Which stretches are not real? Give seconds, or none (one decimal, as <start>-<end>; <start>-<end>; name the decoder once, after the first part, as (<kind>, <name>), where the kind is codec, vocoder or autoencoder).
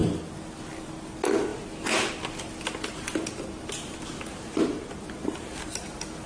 none